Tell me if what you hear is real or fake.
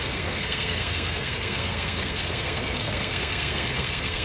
fake